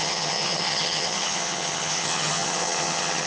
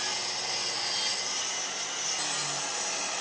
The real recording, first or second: second